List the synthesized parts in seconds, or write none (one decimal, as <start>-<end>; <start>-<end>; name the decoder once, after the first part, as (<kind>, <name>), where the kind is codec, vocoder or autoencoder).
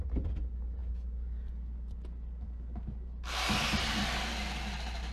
none